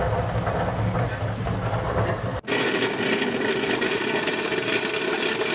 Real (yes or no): yes